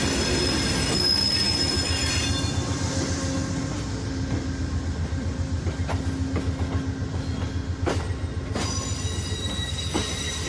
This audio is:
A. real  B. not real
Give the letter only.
A